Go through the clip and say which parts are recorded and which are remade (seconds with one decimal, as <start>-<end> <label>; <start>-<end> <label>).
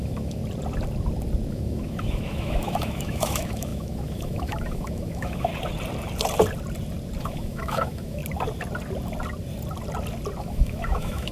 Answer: 0.0-0.4 remade; 0.4-1.5 recorded; 1.5-5.5 remade; 5.5-7.2 recorded; 7.2-8.2 remade; 8.2-10.4 recorded; 10.4-11.3 remade